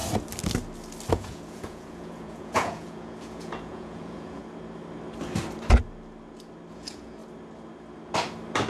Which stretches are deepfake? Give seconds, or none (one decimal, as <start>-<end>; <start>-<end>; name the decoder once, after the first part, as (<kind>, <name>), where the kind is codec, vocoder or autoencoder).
1.1-4.4 (vocoder, Vocos); 6.7-7.2